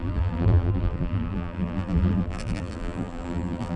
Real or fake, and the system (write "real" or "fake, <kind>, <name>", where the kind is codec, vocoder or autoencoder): fake, vocoder, BigVGAN v2